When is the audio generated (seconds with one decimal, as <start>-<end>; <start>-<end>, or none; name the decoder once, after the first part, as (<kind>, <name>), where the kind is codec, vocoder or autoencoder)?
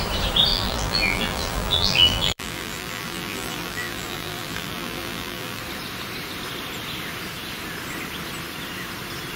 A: 0.5-5.6 (vocoder, BigVGAN v2)